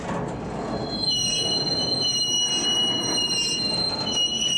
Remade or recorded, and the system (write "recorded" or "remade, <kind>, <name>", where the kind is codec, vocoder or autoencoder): recorded